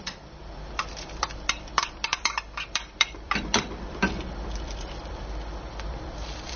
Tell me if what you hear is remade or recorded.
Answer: remade